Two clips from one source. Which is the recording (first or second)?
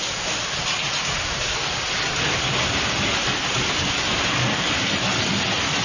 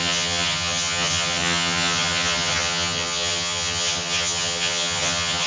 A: first